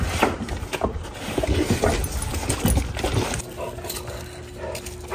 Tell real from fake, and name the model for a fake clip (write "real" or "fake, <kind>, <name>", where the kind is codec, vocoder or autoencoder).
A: real